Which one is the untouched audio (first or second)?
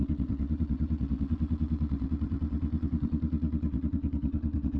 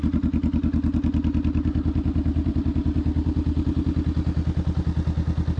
second